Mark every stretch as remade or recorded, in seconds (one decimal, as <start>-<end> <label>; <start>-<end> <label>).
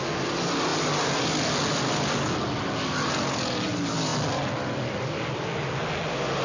0.0-6.4 recorded